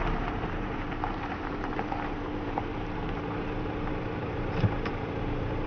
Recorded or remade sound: remade